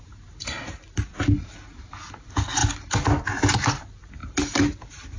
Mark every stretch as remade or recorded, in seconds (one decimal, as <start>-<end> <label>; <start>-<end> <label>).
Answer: 0.0-1.1 remade; 1.1-2.2 recorded; 2.2-2.6 remade; 2.6-3.8 recorded; 3.8-5.2 remade